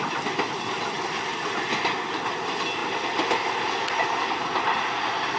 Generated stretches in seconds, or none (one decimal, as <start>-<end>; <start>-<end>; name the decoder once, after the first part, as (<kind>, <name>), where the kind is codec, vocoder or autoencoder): none